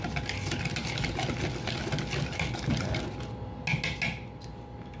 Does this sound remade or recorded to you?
recorded